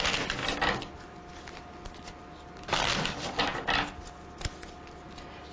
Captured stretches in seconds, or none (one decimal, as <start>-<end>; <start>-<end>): 0.0-5.5